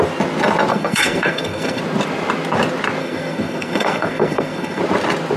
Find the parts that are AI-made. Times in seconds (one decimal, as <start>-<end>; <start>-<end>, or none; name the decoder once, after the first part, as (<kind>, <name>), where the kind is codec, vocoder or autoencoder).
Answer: 0.7-1.8 (codec, SNAC); 3.0-4.8